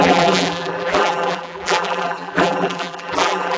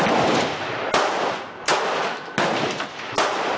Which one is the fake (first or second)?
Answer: first